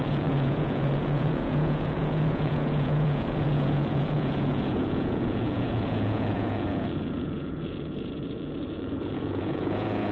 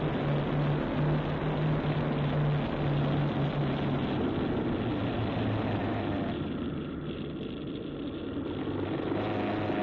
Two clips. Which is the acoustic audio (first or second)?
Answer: second